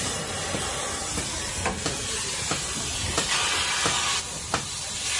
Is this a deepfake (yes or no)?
no